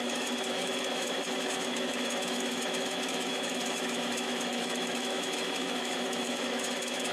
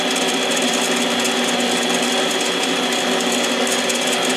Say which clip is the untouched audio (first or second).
second